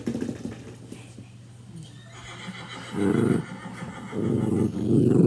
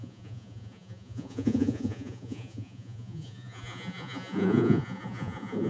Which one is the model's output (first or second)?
second